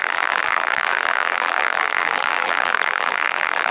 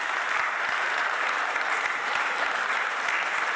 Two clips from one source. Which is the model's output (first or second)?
first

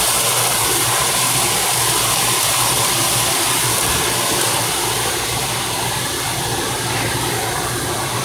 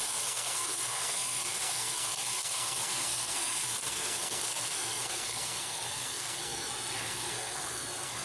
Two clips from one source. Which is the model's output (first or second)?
second